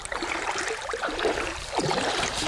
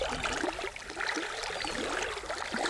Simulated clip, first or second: first